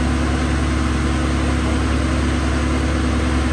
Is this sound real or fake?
real